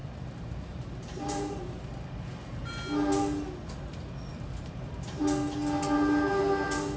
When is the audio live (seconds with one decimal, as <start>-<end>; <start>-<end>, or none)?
2.7-4.3; 5.2-7.0